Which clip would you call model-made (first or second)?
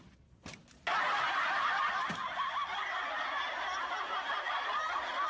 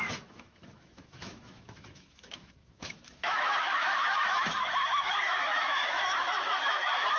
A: second